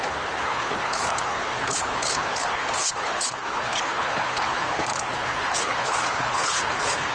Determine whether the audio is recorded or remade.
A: remade